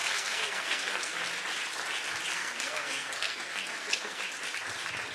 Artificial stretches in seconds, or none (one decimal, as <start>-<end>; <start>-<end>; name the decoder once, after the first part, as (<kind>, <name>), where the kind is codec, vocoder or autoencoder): 0.0-1.2 (codec, SNAC); 2.3-4.2